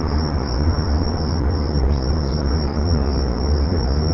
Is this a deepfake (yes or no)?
yes